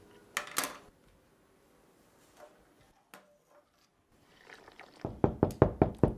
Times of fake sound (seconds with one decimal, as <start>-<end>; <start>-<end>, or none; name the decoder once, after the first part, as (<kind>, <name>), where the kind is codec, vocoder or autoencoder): none